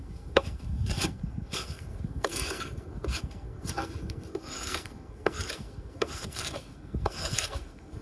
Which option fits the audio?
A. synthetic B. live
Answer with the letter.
A